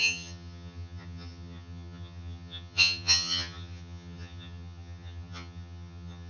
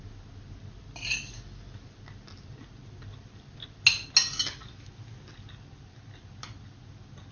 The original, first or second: second